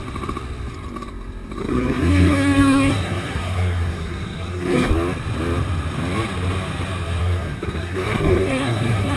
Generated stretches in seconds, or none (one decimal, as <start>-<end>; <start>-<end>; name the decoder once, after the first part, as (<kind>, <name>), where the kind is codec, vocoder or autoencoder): 1.6-4.9 (codec, SNAC); 7.2-9.2